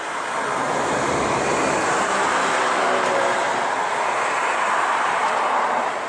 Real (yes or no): no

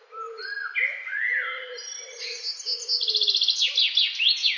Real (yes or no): yes